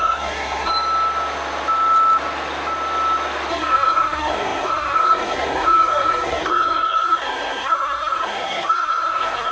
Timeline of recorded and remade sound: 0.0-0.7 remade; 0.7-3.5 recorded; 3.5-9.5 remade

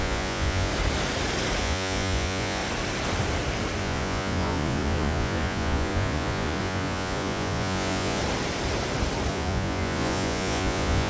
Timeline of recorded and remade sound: 0.0-0.7 remade; 0.7-1.6 recorded; 1.6-2.6 remade; 2.6-3.8 recorded; 3.8-8.2 remade; 8.2-9.3 recorded; 9.3-11.1 remade

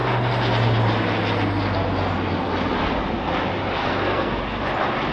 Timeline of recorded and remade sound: 0.0-3.8 recorded; 3.8-4.4 remade; 4.4-5.1 recorded

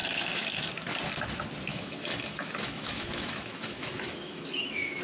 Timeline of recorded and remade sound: 0.0-0.7 remade; 0.7-1.7 recorded; 1.7-5.0 remade

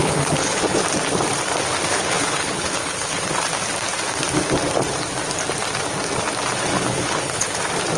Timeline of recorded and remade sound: 0.0-0.8 remade; 0.8-1.9 recorded; 1.9-3.2 remade; 3.2-6.7 recorded; 6.7-7.6 remade; 7.6-8.0 recorded

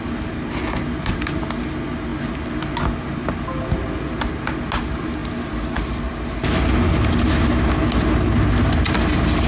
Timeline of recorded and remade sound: 0.0-9.5 recorded

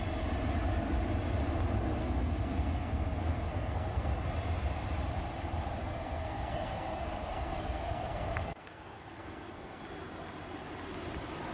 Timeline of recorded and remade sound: 0.0-2.0 recorded; 2.0-4.1 remade; 4.1-5.8 recorded; 5.8-9.8 remade; 9.8-11.5 recorded

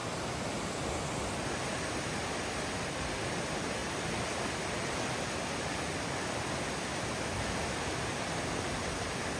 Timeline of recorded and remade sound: 0.0-9.4 recorded